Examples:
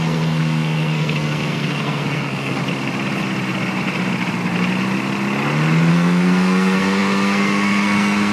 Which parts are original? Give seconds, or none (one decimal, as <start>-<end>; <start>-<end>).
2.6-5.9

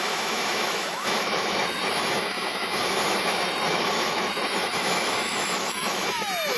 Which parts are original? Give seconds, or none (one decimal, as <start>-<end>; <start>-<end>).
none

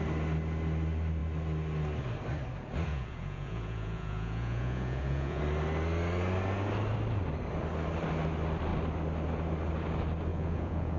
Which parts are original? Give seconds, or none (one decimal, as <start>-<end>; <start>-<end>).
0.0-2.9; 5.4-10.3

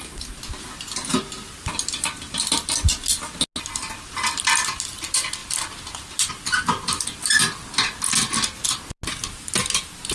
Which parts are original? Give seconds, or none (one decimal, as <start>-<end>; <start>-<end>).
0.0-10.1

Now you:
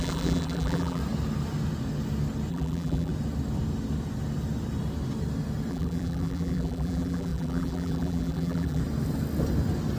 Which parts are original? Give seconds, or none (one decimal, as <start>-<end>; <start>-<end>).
1.0-2.5; 3.1-5.7; 8.8-10.0

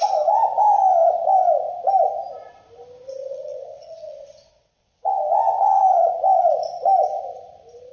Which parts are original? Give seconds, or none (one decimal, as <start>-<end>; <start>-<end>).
0.0-3.2; 5.8-7.9

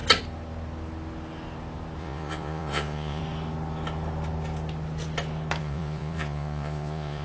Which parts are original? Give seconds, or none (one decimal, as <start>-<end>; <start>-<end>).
0.0-2.0; 3.2-5.6